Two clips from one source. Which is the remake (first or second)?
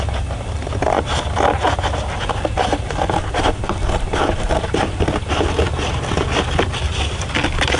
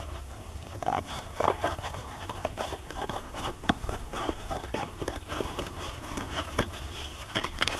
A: second